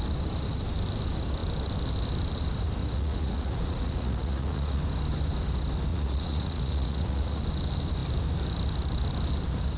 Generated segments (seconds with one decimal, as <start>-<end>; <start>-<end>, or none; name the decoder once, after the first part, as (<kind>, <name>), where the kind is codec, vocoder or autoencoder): 2.8-4.8 (vocoder, Vocos); 5.9-7.4